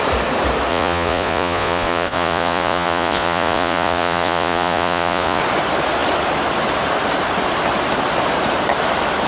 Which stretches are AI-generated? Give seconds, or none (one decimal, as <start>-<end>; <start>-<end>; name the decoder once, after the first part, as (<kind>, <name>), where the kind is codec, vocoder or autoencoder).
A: 0.7-5.4 (vocoder, Vocos)